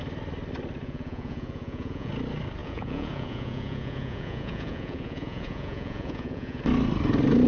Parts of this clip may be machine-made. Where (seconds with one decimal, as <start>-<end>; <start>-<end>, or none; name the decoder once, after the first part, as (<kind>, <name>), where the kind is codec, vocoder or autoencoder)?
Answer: 0.8-2.1 (vocoder, Vocos); 2.6-6.6